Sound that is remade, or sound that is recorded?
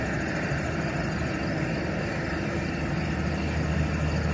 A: recorded